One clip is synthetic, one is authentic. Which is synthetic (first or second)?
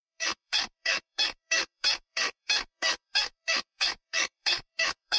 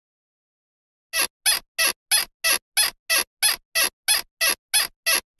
first